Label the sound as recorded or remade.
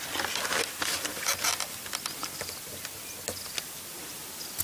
recorded